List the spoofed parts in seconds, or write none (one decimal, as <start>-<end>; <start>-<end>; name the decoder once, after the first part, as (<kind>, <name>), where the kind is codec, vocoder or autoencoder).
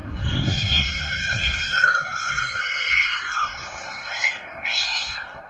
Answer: 0.0-5.5 (codec, SNAC)